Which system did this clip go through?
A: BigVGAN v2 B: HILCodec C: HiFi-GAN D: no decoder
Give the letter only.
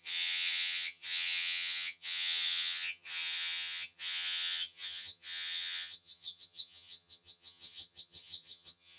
C